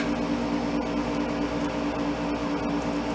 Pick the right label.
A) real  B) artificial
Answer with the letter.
A